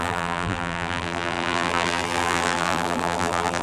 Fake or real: fake